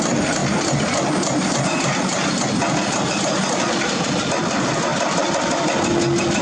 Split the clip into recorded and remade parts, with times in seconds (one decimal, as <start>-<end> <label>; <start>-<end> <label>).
0.0-6.4 recorded